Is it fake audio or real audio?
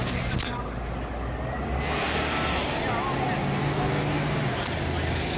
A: real